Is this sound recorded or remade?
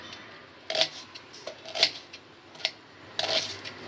recorded